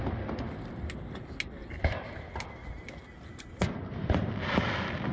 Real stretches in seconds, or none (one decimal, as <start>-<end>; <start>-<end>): 0.0-5.1

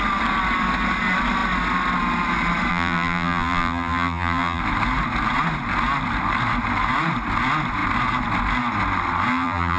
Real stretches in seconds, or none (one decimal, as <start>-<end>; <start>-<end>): 0.0-2.7; 4.6-9.3

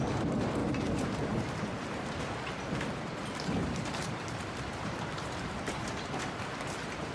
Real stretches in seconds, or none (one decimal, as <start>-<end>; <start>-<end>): 0.0-0.6; 2.2-3.6; 6.4-7.1

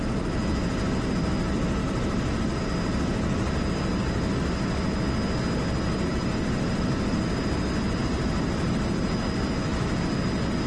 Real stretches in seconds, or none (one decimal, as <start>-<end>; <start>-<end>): 0.0-1.8; 2.6-6.1; 7.2-10.7

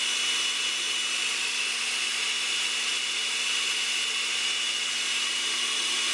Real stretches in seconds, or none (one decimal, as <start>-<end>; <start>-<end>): 0.0-6.1

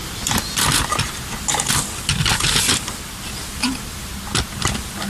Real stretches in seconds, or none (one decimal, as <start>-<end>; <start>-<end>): 0.0-3.4; 4.1-5.1

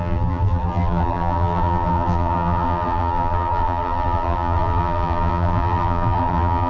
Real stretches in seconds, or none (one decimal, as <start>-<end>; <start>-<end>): none